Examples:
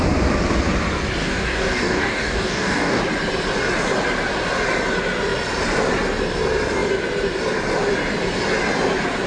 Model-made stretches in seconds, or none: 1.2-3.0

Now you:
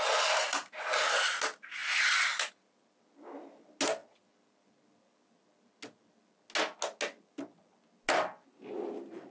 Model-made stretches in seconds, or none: none

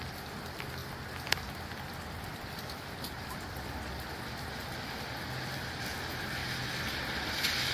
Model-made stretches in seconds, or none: 0.0-0.8; 1.4-6.4; 7.3-7.7